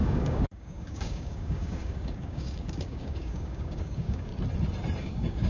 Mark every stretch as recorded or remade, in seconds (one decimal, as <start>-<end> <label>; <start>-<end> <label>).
0.0-4.3 remade; 4.3-5.0 recorded; 5.0-5.5 remade